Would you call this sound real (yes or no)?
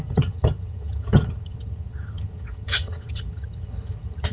no